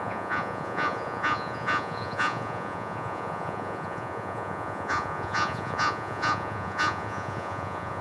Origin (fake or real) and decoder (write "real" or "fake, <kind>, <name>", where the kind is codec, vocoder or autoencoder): fake, vocoder, Vocos